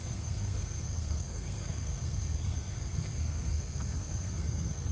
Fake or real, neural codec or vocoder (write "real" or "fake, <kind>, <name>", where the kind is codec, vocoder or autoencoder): fake, codec, SNAC